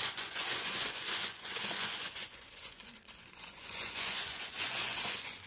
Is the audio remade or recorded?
remade